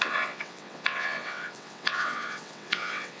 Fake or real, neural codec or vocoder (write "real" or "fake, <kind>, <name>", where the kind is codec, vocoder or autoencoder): fake, vocoder, WaveNeXt